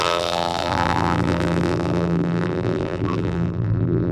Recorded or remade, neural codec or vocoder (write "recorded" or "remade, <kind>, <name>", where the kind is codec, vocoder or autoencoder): remade, vocoder, BigVGAN v2